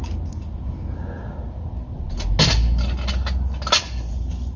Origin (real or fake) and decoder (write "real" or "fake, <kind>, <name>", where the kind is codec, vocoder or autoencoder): real